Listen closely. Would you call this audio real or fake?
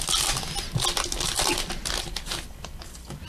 real